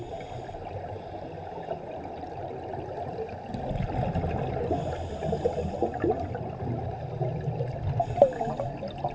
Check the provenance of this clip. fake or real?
real